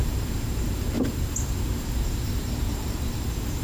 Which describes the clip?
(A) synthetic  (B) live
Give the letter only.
A